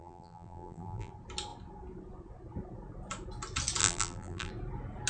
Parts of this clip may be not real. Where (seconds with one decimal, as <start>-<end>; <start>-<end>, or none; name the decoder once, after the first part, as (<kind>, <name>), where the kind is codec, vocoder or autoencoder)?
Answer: 0.0-1.1 (vocoder, BigVGAN v2); 3.8-4.5